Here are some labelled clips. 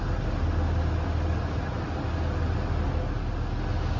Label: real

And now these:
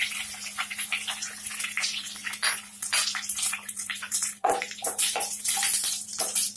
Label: fake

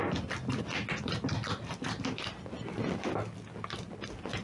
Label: real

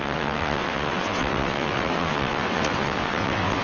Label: fake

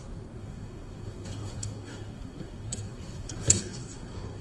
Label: fake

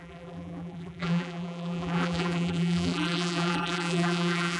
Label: fake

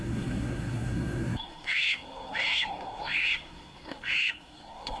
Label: fake